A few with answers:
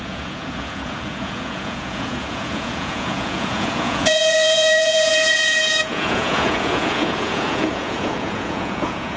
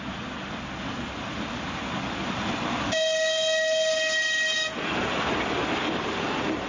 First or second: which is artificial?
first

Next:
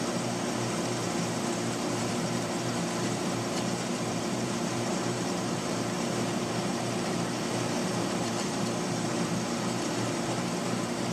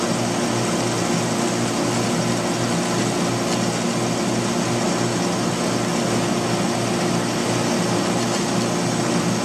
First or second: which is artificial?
first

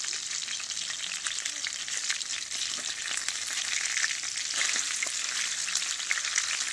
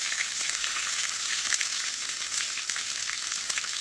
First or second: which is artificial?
second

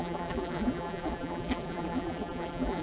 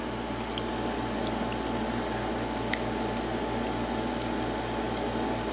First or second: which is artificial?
first